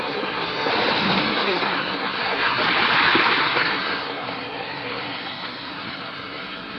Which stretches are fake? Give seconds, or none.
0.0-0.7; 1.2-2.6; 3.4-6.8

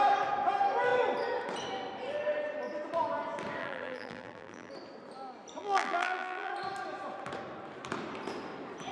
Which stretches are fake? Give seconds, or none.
3.6-4.7; 5.6-6.5

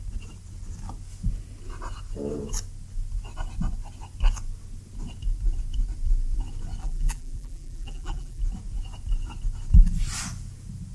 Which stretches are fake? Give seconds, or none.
6.8-8.4

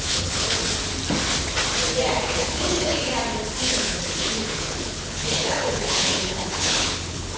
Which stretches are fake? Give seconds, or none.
0.0-0.6; 2.2-3.1; 3.6-7.4